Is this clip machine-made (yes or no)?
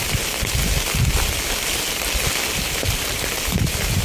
no